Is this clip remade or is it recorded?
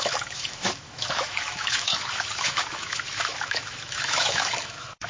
remade